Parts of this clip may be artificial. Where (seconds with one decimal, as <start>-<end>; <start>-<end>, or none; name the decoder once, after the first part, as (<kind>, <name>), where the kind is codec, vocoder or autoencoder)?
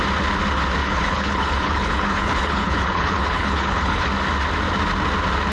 0.8-4.1 (codec, HILCodec)